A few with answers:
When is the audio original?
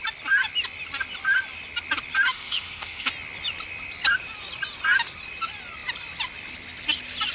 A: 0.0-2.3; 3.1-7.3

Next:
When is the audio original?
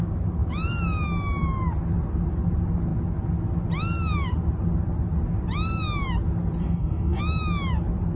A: 0.0-6.6; 7.2-8.2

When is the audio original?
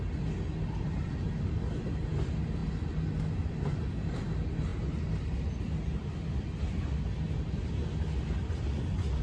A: 0.0-9.2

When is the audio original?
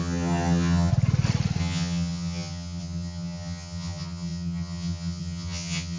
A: 0.9-1.6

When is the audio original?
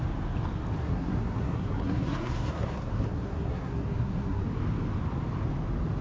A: 0.0-0.8; 4.4-6.0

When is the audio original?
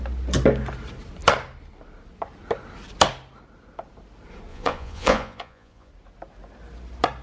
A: 0.0-4.5; 5.9-7.2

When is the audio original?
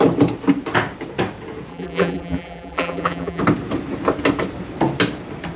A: 0.0-1.7; 3.4-5.6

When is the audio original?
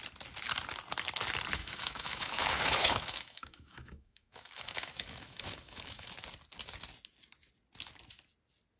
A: 0.0-1.6; 6.1-8.8